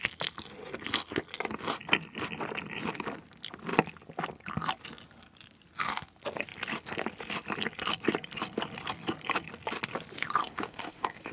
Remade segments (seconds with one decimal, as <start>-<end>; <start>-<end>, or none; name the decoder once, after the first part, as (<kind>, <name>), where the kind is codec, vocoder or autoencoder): 10.4-11.3 (autoencoder, DAC-VAE)